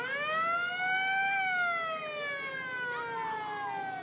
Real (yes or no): yes